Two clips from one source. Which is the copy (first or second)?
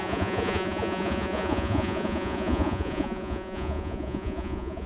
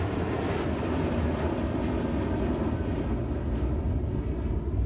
first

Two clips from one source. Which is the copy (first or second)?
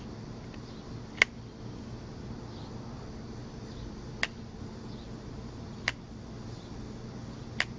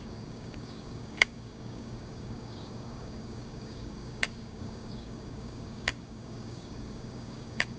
second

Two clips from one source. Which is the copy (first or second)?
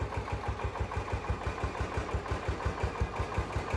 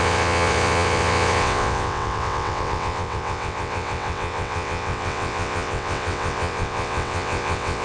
second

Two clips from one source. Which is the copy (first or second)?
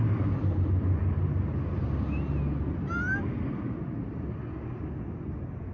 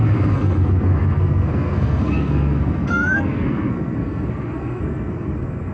second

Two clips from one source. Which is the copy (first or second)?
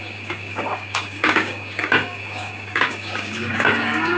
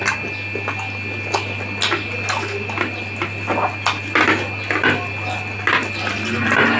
first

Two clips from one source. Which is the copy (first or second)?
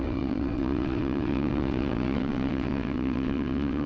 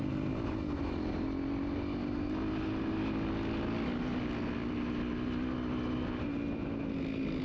first